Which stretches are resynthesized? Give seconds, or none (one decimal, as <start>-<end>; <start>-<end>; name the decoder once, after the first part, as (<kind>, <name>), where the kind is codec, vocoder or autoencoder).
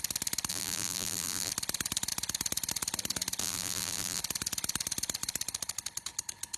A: 0.5-1.5 (vocoder, BigVGAN v2); 3.4-4.2